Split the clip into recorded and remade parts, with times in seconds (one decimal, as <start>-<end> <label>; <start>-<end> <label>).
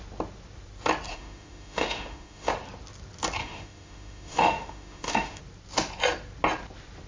0.0-1.1 recorded; 1.1-2.5 remade; 2.5-3.4 recorded; 3.4-5.4 remade; 5.4-7.1 recorded